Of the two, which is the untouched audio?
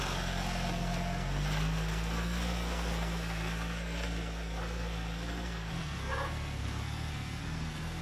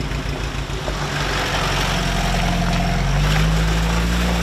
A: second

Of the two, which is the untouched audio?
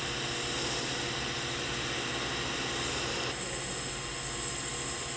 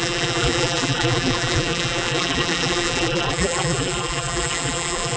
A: first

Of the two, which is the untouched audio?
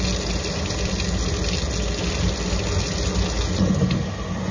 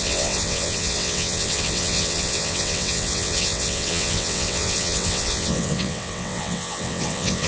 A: first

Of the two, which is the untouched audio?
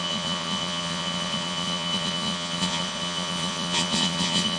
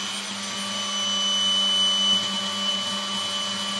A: second